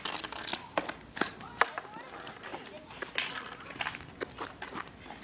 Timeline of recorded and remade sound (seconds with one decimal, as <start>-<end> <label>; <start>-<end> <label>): 0.0-5.2 recorded